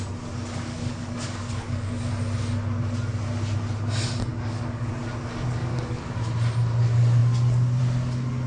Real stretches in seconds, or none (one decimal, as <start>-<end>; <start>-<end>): 0.0-0.7; 2.1-4.3; 4.9-5.6; 6.1-8.5